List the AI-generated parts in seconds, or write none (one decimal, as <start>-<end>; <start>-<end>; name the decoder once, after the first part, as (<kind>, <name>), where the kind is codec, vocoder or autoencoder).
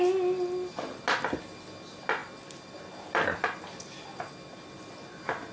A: none